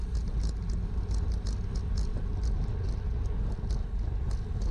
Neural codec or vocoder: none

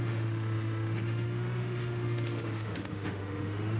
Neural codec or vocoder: autoencoder, DAC-VAE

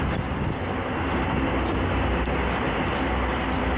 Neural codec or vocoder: none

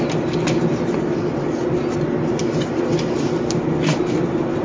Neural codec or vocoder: none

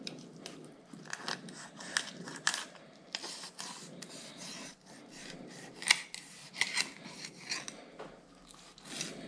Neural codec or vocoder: none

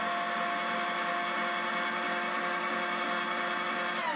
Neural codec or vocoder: none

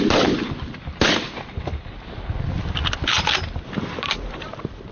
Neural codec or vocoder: none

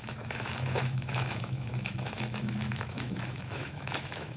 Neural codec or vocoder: autoencoder, DAC-VAE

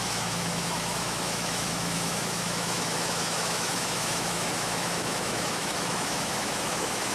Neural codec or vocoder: autoencoder, DAC-VAE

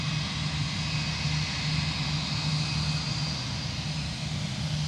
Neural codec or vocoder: none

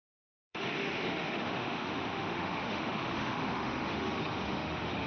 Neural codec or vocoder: autoencoder, DAC-VAE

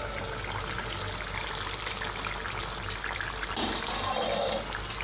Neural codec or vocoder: none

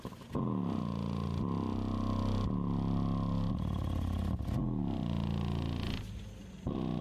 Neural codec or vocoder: none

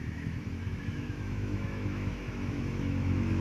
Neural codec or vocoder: autoencoder, DAC-VAE